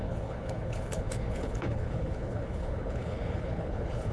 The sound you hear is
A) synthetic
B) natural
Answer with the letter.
A